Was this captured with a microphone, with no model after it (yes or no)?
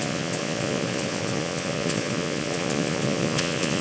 no